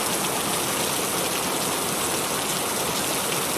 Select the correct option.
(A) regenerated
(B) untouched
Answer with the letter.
B